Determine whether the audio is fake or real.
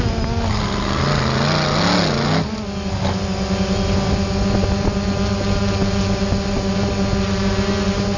real